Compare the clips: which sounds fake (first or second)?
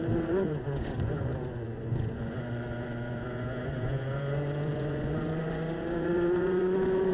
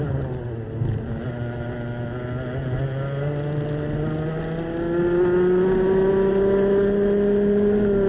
first